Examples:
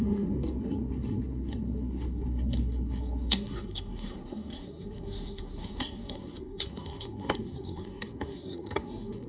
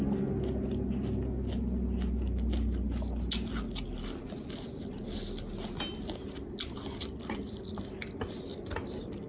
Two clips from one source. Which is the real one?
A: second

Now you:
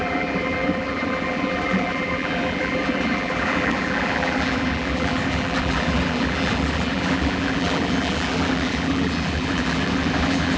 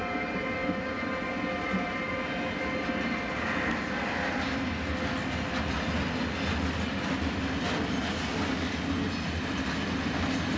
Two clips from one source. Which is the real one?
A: second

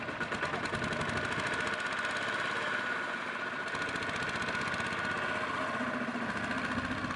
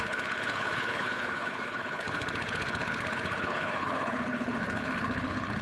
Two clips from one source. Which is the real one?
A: first